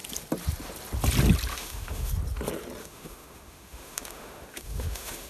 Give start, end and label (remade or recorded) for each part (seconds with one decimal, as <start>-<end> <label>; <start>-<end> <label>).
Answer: 0.0-1.5 recorded; 1.5-2.1 remade; 2.1-2.8 recorded; 2.8-5.3 remade